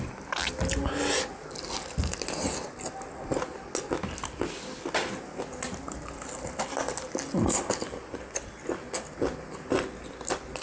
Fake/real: real